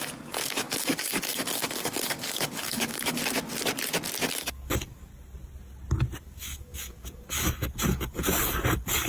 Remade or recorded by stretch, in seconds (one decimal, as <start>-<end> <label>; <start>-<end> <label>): 0.0-3.2 remade; 3.2-4.3 recorded; 4.3-5.1 remade; 5.1-6.2 recorded; 6.2-9.1 remade